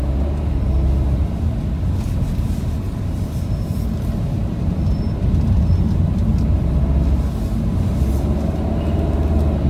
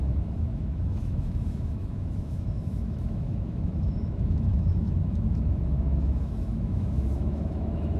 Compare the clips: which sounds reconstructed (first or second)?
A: second